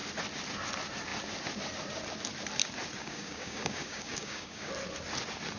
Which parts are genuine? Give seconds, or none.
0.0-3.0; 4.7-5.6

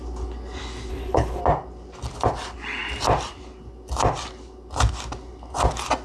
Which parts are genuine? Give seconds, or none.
0.0-0.9; 1.4-6.0